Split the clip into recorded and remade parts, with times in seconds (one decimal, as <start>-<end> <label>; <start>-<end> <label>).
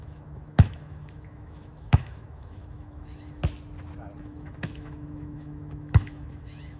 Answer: 0.0-3.4 remade; 3.4-4.2 recorded; 4.2-6.8 remade